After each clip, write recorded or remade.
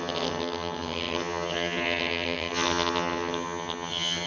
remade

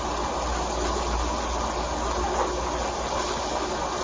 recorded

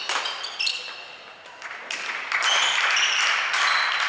recorded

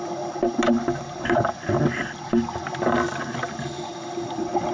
recorded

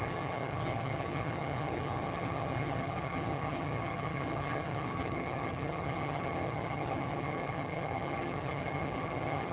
remade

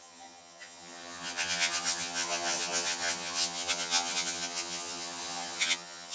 remade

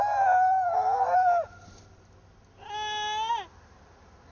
recorded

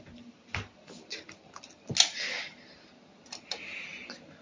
recorded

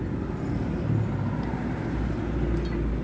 recorded